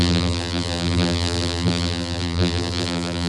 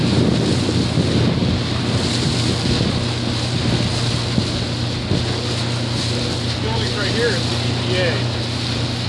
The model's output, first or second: first